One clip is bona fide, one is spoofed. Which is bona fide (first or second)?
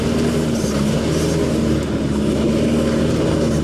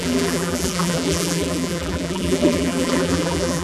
first